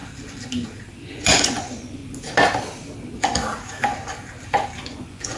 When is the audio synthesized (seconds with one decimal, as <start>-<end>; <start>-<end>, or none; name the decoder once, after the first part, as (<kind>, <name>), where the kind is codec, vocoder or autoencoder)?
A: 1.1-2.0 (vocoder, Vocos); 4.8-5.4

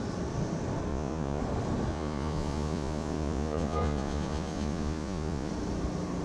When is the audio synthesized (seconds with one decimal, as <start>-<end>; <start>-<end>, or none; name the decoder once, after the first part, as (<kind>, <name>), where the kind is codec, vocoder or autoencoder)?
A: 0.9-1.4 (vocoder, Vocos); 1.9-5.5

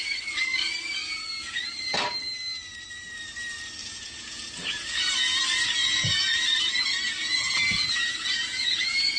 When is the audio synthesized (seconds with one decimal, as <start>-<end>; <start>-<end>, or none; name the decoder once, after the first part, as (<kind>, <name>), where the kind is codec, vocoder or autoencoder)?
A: 3.8-5.1 (vocoder, Vocos); 5.8-6.4; 7.2-9.2

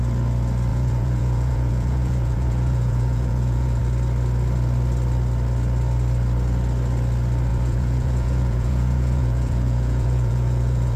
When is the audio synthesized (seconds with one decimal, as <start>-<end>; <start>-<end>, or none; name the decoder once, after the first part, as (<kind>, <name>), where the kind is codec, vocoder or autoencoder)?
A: 0.7-3.8 (vocoder, Vocos); 7.5-11.0

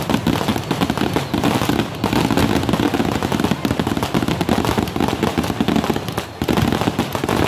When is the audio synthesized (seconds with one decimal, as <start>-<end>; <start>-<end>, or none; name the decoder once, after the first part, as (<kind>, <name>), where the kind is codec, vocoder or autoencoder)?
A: none

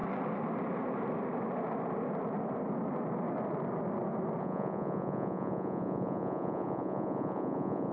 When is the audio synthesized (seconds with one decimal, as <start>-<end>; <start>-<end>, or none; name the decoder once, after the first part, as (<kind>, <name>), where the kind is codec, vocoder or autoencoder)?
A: 4.4-7.9 (vocoder, Vocos)